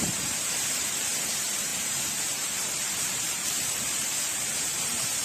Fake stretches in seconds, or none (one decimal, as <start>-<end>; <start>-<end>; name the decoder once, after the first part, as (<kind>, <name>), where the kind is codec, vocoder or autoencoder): 0.0-5.2 (vocoder, BigVGAN v2)